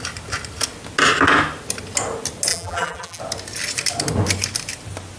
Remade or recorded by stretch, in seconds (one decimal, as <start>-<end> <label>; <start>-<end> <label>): 0.0-2.5 recorded; 2.5-3.2 remade; 3.2-5.2 recorded

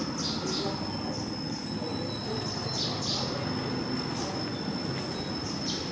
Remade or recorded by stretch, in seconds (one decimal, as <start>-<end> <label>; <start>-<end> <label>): 0.0-5.9 recorded

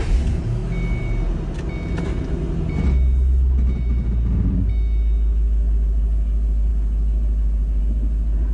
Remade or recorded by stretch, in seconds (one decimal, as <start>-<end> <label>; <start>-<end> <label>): 0.0-8.5 recorded